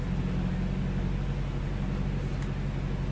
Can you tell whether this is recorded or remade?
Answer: recorded